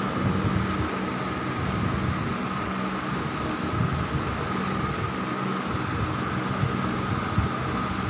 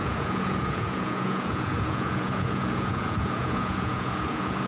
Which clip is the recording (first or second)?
first